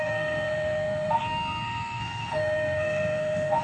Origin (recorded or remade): remade